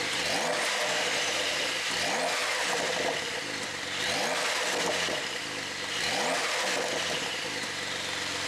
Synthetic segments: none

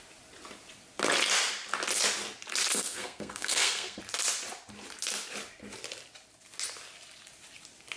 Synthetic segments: 2.7-4.0 (codec, SNAC)

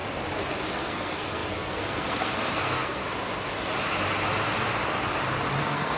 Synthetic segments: 0.7-3.0 (codec, SNAC); 5.6-6.0

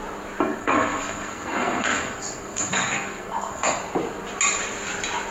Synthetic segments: 0.6-3.8 (codec, SNAC)

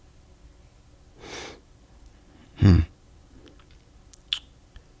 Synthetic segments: none